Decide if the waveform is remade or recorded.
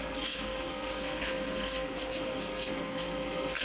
remade